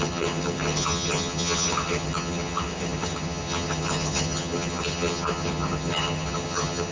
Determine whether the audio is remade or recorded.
remade